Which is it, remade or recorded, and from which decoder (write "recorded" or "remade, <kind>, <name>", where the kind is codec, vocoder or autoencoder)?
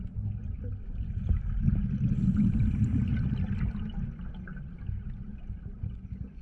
recorded